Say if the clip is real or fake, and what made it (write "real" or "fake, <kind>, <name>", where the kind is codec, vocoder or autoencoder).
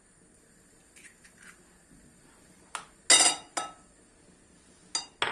real